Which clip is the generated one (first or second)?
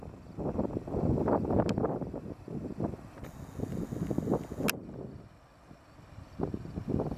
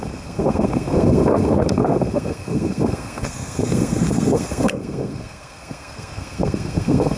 second